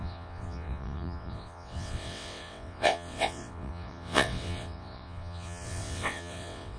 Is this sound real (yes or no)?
no